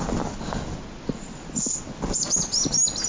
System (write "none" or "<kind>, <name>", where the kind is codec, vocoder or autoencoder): none